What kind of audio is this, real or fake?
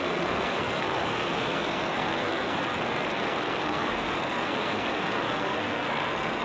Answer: fake